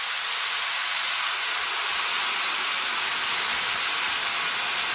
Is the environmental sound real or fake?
real